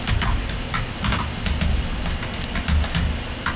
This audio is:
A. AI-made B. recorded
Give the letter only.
B